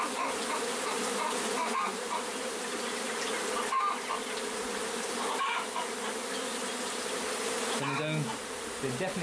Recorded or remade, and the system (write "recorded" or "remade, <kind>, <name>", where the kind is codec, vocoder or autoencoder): recorded